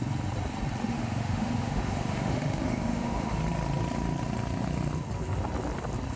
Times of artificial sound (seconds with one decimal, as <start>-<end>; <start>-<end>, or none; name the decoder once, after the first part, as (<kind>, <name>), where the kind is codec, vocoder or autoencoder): 0.9-3.4 (autoencoder, DAC-VAE)